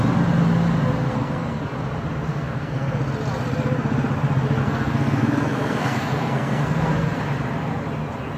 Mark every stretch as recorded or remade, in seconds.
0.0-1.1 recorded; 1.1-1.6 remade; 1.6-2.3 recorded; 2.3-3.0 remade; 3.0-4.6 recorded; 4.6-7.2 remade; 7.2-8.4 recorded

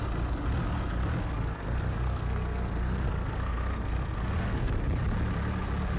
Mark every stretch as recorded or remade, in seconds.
0.0-1.2 recorded; 1.2-4.8 remade; 4.8-6.0 recorded

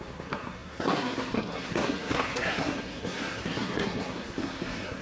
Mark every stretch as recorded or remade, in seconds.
0.0-5.0 remade

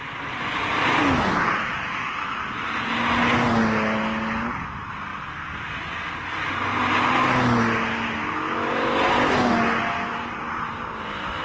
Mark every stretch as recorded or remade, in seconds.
0.0-11.4 recorded